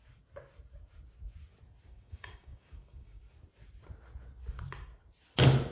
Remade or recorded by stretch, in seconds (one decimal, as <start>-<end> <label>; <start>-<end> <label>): 0.0-1.9 recorded; 1.9-3.2 remade; 3.2-5.7 recorded